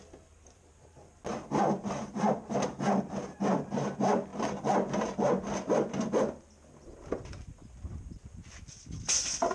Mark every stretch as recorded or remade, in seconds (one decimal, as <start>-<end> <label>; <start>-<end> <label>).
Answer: 0.0-9.5 recorded